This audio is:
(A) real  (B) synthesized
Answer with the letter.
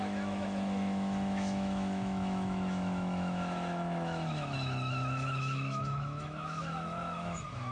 B